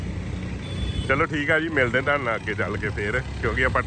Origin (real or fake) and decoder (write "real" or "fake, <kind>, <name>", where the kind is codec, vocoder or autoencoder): real